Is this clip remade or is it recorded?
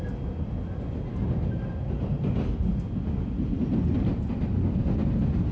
recorded